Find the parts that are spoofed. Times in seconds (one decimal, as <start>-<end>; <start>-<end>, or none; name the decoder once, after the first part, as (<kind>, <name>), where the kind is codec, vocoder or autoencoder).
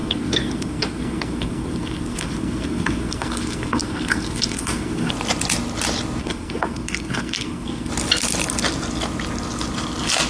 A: 0.0-5.1 (codec, SNAC); 6.2-7.9